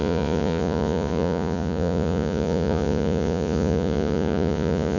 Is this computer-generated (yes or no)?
yes